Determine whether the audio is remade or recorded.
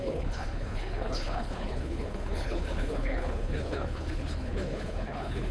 remade